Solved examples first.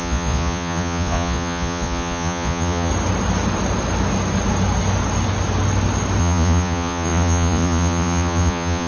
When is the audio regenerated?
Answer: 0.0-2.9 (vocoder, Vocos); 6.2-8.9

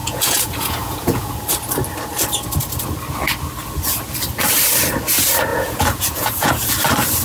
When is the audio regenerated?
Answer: 0.0-1.3 (vocoder, Vocos); 5.5-6.5

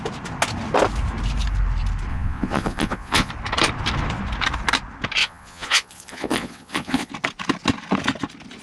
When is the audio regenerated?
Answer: 2.1-3.3 (vocoder, Vocos); 5.2-7.1